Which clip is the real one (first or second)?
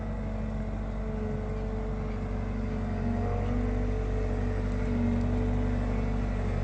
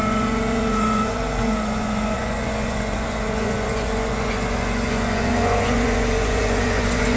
first